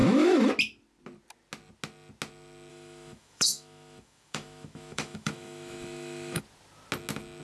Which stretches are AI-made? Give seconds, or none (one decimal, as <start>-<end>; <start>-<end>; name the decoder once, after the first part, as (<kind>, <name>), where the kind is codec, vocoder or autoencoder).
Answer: 0.0-0.5 (autoencoder, DAC-VAE); 2.7-6.4